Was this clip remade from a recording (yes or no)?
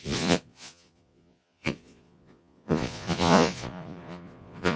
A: yes